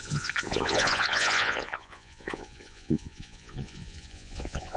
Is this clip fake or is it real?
fake